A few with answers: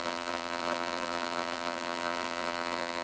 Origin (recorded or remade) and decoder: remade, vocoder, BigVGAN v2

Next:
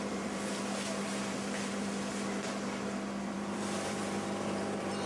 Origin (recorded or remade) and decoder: remade, vocoder, BigVGAN v2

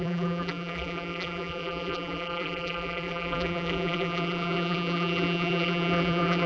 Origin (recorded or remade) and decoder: remade, vocoder, BigVGAN v2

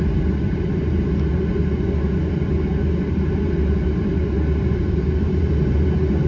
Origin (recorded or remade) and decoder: recorded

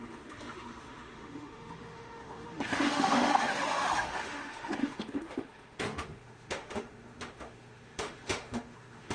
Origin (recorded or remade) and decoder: remade, autoencoder, DAC-VAE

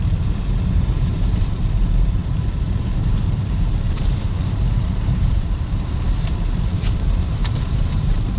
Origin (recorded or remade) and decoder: remade, vocoder, BigVGAN v2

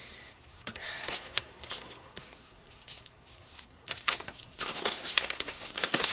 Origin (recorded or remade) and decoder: remade, codec, SNAC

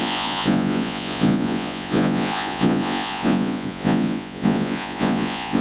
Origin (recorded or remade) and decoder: remade, vocoder, Vocos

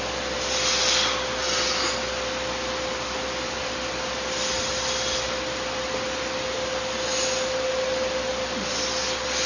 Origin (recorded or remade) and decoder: recorded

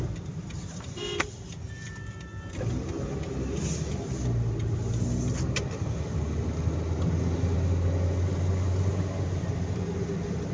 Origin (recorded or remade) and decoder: recorded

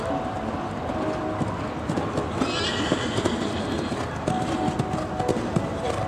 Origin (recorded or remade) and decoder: recorded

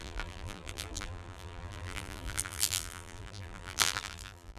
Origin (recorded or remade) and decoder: remade, vocoder, BigVGAN v2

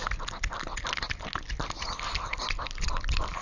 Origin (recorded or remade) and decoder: recorded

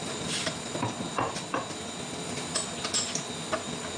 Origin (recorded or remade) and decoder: recorded